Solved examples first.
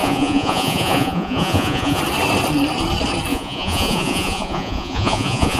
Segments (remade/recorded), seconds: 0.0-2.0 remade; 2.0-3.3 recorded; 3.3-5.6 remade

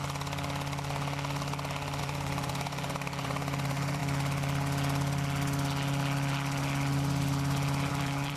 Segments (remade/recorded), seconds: 0.0-2.0 recorded; 2.0-4.0 remade; 4.0-7.9 recorded; 7.9-8.4 remade

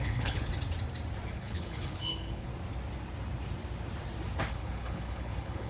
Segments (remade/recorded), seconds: 0.0-0.5 remade; 0.5-1.3 recorded; 1.3-2.5 remade; 2.5-4.5 recorded; 4.5-5.7 remade

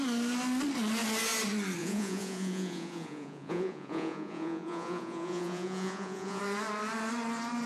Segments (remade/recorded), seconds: 0.0-1.8 recorded; 1.8-6.4 remade; 6.4-7.7 recorded

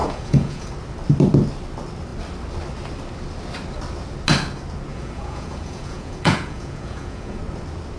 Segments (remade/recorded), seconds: 0.0-0.7 remade; 0.7-4.9 recorded; 4.9-7.4 remade; 7.4-8.0 recorded

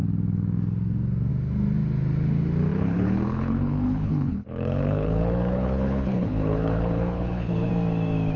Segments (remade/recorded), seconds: 0.0-2.7 recorded; 2.7-7.7 remade; 7.7-8.4 recorded

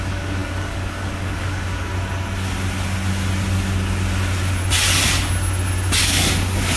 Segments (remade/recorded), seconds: 0.0-1.9 remade; 1.9-6.0 recorded; 6.0-6.8 remade